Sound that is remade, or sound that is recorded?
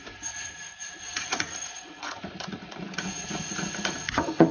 remade